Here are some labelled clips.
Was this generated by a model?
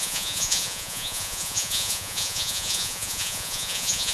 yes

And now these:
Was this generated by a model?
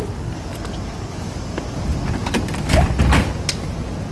no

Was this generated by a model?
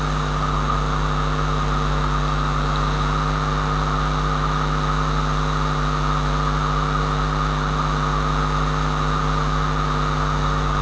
no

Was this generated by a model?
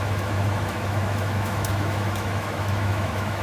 yes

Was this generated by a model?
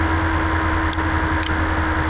no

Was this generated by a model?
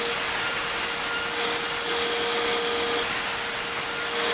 no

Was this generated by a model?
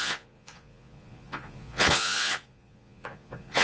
yes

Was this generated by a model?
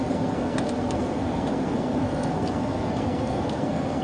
yes